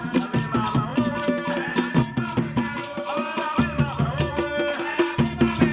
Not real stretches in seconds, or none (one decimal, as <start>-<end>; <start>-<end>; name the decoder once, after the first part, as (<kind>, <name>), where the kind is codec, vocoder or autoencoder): none